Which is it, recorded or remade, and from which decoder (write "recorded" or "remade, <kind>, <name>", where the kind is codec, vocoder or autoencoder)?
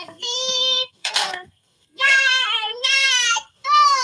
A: remade, codec, SNAC